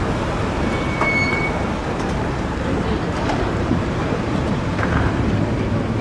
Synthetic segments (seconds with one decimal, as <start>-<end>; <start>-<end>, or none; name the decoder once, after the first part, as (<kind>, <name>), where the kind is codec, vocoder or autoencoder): 1.8-5.4 (vocoder, BigVGAN v2)